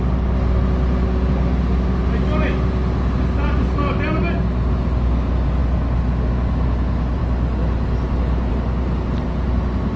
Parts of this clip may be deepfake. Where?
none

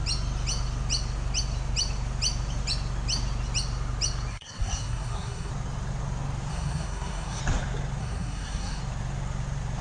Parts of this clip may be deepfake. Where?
4.3-5.5 (codec, SNAC); 6.5-7.4; 8.0-8.8

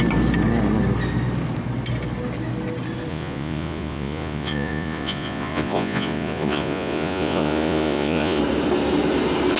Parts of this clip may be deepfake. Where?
3.1-8.4 (vocoder, Vocos)

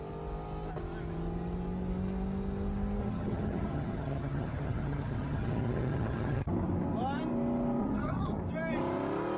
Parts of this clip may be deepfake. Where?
3.0-6.5 (vocoder, HiFi-GAN); 7.8-8.4